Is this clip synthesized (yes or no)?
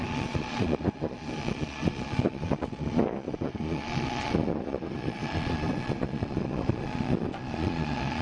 yes